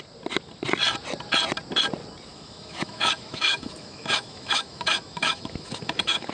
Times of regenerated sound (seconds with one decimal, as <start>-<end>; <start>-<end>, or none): 2.3-6.3

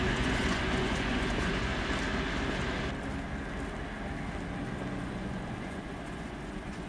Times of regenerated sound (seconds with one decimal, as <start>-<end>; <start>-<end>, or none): 0.0-1.7; 5.0-6.9

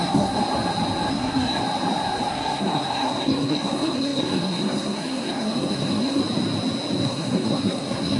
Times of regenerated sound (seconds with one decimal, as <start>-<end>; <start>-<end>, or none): 0.0-0.4; 1.1-1.6; 2.3-6.2; 7.0-8.2

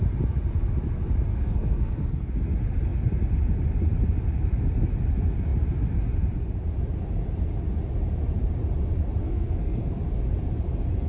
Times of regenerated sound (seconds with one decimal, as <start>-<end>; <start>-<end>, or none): 1.3-2.3; 9.2-10.0

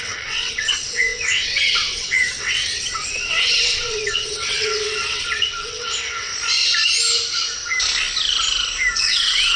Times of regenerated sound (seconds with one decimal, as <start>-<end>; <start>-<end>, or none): 0.0-6.3; 9.0-9.6